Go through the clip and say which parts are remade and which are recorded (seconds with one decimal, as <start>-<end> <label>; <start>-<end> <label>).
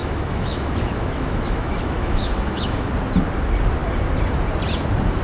0.0-2.9 remade; 2.9-5.2 recorded